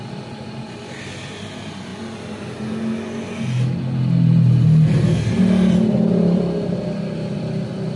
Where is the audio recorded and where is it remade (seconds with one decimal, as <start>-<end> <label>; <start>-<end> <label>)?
0.0-8.0 recorded